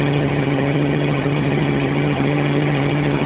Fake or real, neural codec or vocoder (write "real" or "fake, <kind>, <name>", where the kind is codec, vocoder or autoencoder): fake, vocoder, HiFi-GAN